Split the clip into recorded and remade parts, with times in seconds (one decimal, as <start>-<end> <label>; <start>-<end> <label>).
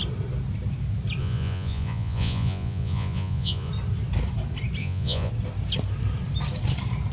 0.0-1.2 recorded; 1.2-3.7 remade; 3.7-4.8 recorded; 4.8-5.3 remade; 5.3-7.1 recorded